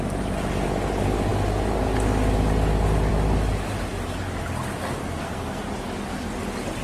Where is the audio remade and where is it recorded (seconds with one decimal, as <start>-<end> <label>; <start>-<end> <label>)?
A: 0.0-5.0 recorded; 5.0-5.6 remade; 5.6-6.8 recorded